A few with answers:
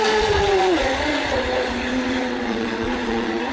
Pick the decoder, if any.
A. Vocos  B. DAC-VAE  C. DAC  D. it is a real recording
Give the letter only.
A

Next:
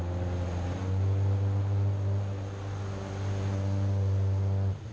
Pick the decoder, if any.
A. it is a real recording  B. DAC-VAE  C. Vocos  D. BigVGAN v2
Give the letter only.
A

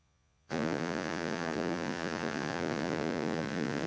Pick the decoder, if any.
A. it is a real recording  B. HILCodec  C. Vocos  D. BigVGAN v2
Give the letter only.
C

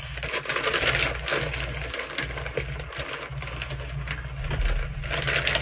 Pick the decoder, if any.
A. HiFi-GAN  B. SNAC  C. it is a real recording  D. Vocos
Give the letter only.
C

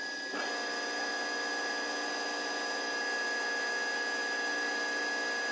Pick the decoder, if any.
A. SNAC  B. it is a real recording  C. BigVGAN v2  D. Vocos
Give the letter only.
B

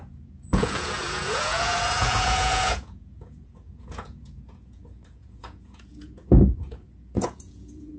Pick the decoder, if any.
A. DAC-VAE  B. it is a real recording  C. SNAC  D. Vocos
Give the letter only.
D